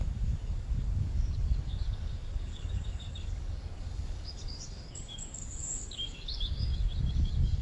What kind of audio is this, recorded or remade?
remade